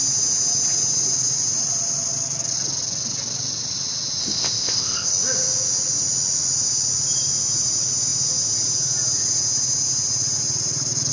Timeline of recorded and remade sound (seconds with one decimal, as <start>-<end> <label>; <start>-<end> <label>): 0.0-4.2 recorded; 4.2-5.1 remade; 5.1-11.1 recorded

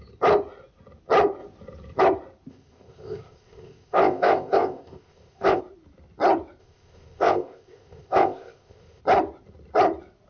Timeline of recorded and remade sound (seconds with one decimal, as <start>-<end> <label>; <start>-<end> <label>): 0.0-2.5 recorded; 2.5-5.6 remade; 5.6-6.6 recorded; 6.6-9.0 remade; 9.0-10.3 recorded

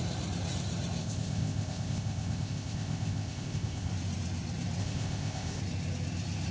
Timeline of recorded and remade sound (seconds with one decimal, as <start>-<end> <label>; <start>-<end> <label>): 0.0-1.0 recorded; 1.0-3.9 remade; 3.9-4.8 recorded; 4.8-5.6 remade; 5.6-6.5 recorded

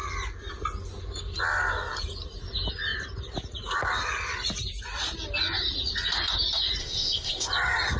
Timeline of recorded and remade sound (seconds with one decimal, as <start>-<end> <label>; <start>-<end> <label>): 0.0-6.8 recorded; 6.8-7.5 remade; 7.5-8.0 recorded

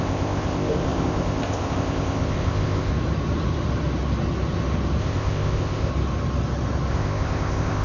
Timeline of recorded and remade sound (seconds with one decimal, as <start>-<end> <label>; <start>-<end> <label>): 0.0-2.9 remade; 2.9-5.0 recorded; 5.0-5.9 remade; 5.9-6.9 recorded; 6.9-7.8 remade